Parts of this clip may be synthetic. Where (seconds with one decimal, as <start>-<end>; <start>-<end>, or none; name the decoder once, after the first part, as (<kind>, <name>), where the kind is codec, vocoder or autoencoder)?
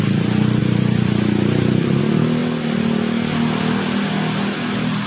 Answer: 0.6-2.0 (vocoder, BigVGAN v2)